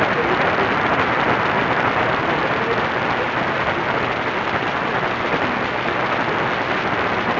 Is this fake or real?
real